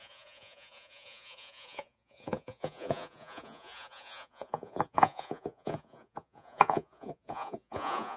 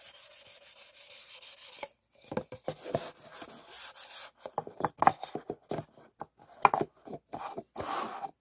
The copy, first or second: first